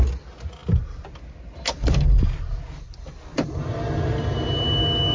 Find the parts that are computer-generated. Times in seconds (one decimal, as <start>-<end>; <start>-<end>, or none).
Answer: none